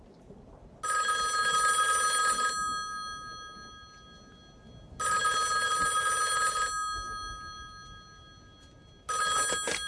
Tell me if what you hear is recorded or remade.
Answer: recorded